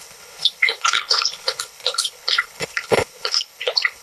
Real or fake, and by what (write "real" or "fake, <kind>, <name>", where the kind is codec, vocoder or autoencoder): fake, codec, HILCodec